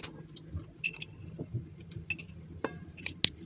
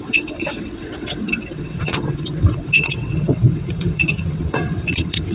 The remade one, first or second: second